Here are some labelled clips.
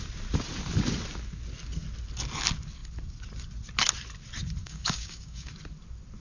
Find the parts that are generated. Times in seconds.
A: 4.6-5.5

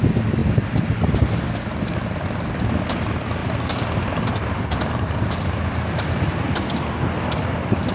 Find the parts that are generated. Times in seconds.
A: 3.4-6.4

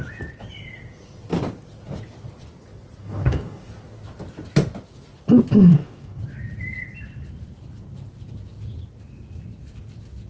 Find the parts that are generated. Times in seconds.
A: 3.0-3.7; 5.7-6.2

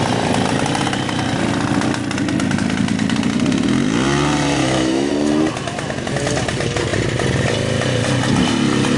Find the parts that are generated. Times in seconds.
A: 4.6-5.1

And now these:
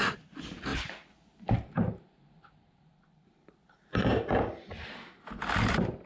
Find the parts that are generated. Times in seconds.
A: 0.7-4.4

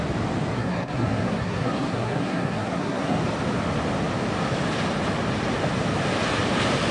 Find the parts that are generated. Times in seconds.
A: 0.5-3.2

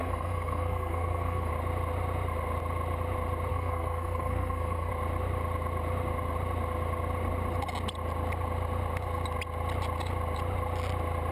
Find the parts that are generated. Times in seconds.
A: 0.0-1.5; 3.5-4.9

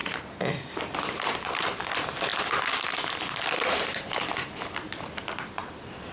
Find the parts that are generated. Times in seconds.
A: 0.6-2.3; 3.5-6.1